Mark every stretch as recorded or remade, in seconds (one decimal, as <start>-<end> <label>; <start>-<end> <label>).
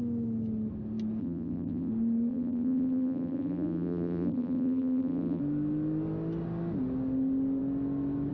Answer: 0.0-1.2 recorded; 1.2-1.9 remade; 1.9-2.3 recorded; 2.3-5.4 remade; 5.4-8.3 recorded